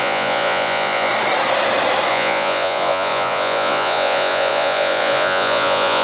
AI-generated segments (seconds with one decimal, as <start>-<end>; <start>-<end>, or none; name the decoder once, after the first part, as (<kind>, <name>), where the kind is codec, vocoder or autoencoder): 0.0-1.1 (vocoder, Vocos); 2.1-6.0